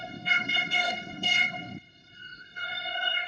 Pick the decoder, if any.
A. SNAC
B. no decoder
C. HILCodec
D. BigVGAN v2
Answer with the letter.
A